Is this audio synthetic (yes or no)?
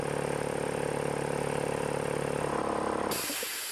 no